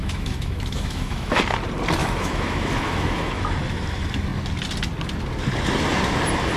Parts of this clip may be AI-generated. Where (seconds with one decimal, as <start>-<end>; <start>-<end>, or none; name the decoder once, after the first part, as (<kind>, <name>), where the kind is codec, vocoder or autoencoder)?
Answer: 0.0-1.4 (autoencoder, DAC-VAE); 2.0-3.4